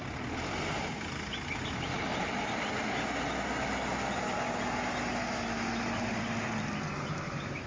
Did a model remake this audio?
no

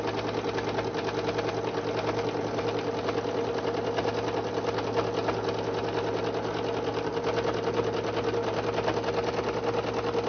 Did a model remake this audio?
no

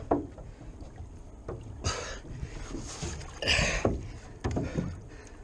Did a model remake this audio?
no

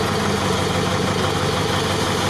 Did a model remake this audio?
no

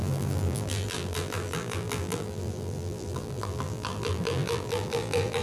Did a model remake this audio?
yes